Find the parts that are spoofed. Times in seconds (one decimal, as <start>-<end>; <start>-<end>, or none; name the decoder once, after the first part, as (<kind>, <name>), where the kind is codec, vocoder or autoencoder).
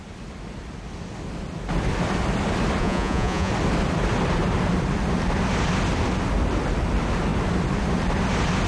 2.8-3.5 (vocoder, Vocos)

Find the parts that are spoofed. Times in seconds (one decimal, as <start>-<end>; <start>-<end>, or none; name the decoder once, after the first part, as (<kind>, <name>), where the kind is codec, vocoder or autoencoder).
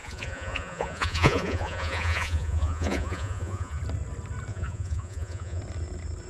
0.0-3.8 (vocoder, Vocos); 4.5-5.6